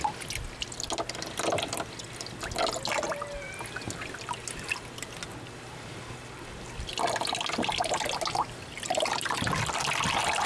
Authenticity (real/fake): real